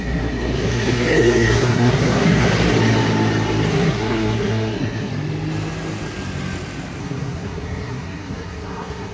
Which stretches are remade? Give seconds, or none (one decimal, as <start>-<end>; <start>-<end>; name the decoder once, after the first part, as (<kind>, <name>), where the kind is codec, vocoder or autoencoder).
0.0-2.5 (codec, SNAC); 3.7-5.1; 7.0-9.1